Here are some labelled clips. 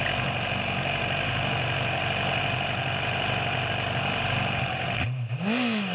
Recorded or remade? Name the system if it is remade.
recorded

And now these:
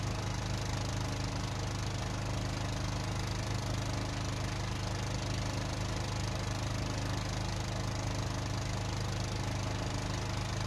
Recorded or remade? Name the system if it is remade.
recorded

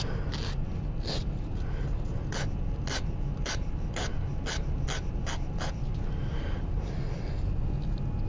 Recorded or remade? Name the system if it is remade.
recorded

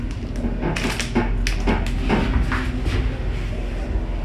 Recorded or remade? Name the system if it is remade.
recorded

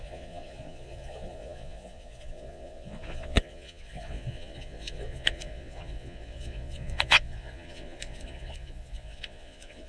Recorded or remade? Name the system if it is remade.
remade, vocoder, Vocos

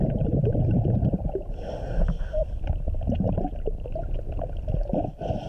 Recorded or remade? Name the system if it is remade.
recorded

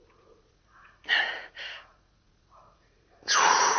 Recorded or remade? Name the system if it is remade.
remade, vocoder, Vocos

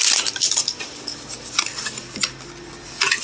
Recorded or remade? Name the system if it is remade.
recorded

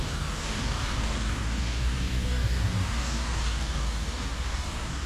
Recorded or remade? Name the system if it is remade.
remade, codec, DAC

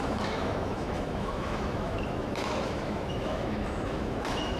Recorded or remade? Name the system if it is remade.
remade, autoencoder, DAC-VAE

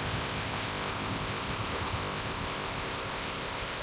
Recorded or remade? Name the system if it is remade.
remade, codec, ZipCodec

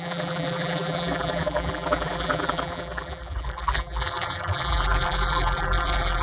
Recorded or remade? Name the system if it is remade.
remade, vocoder, BigVGAN v2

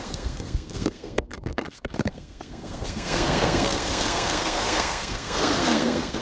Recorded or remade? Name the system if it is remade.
remade, codec, SNAC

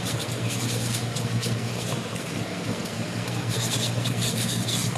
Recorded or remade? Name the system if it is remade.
remade, codec, SNAC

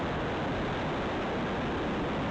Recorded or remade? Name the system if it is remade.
recorded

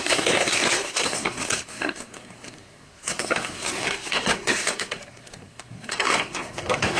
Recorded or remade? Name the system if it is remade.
remade, codec, SNAC